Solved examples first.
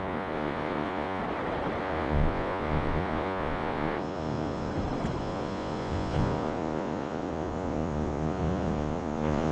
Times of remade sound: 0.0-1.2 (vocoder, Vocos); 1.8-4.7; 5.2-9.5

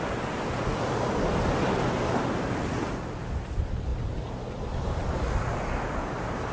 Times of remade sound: none

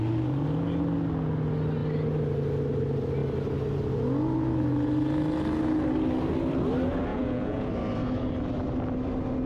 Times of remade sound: 7.1-7.7 (vocoder, Vocos)

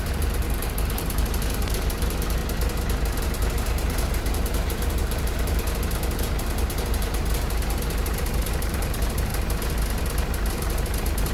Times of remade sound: 0.0-2.4 (vocoder, BigVGAN v2); 3.2-9.3; 10.5-11.3

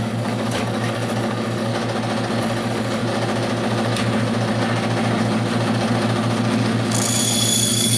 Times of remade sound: 0.0-1.7 (codec, DAC); 2.4-3.0; 7.2-8.0

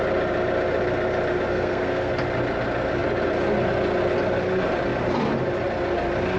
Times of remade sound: 1.5-2.1 (codec, SNAC)

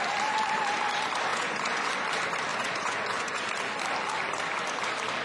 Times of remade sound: 1.3-1.9 (vocoder, Vocos); 2.5-3.4